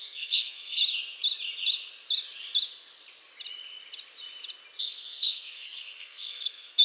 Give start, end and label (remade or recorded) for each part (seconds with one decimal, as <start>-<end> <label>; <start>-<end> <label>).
0.0-0.8 remade; 0.8-4.8 recorded; 4.8-6.8 remade